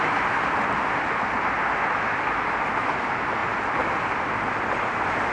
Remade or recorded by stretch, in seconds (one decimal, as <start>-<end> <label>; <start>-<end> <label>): 0.0-5.3 recorded